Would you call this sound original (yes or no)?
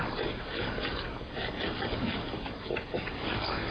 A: no